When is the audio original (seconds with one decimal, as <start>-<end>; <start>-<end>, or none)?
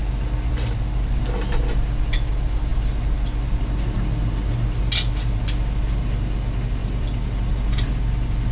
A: 0.0-6.8; 7.9-8.5